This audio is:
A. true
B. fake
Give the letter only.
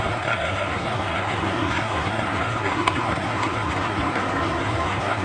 B